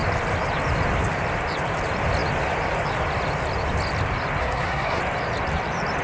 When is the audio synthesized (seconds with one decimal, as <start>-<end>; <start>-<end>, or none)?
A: 4.4-5.0